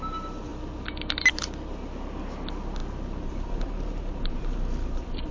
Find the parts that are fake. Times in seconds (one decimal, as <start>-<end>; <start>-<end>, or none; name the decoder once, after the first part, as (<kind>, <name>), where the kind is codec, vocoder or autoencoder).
none